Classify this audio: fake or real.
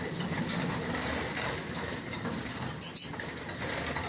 real